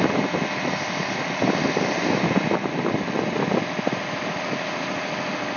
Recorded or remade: recorded